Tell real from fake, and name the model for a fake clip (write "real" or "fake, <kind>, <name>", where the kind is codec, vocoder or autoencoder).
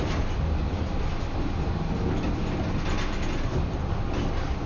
real